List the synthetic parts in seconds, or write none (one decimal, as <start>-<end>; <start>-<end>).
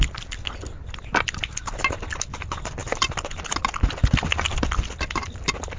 none